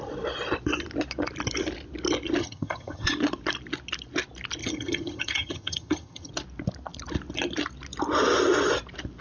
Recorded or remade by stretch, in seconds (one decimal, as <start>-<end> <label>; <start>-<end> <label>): 0.0-2.4 recorded; 2.4-3.1 remade; 3.1-4.6 recorded; 4.6-6.3 remade; 6.3-9.2 recorded